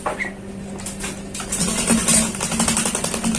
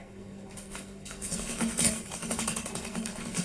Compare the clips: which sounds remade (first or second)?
second